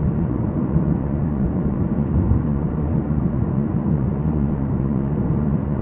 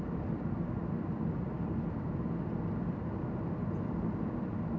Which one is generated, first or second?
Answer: first